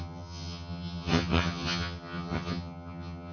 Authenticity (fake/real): fake